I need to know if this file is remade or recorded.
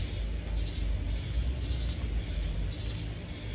recorded